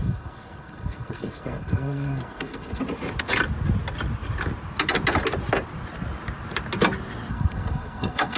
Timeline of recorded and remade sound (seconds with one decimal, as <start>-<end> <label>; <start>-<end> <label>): 0.0-2.8 remade; 2.8-7.3 recorded; 7.3-8.4 remade